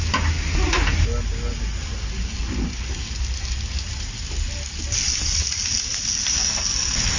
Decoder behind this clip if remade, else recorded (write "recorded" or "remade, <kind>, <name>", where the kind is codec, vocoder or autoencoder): recorded